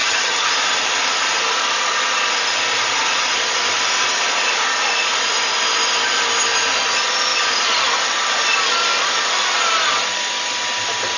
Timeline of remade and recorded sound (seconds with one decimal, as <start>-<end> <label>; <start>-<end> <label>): 0.0-0.5 remade; 0.5-11.2 recorded